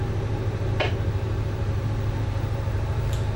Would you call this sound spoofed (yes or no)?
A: yes